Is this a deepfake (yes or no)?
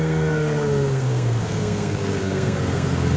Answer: yes